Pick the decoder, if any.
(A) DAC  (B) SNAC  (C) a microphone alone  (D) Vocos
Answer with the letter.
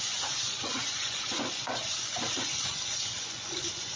D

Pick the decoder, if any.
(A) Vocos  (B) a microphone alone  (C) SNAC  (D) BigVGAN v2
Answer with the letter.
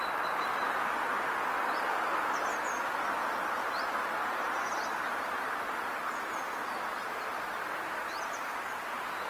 B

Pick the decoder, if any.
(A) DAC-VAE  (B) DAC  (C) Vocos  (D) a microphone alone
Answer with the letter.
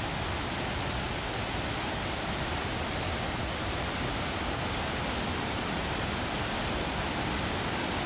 D